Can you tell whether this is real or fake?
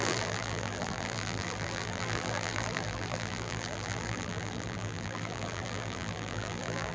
fake